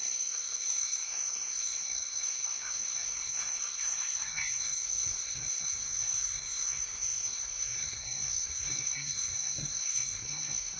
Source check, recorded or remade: remade